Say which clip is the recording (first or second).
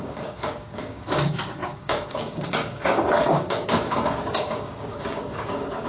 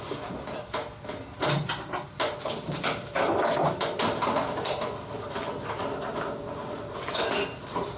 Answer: second